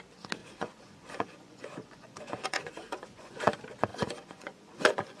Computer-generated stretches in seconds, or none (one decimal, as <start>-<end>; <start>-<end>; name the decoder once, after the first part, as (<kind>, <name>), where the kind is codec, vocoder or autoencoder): 0.4-3.5 (vocoder, Vocos); 3.9-5.2